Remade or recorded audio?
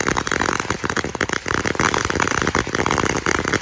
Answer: recorded